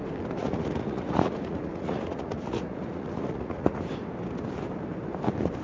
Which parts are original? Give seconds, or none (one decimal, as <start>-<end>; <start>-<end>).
0.0-0.4; 3.8-5.6